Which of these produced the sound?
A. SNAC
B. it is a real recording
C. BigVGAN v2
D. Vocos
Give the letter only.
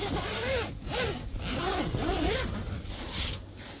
B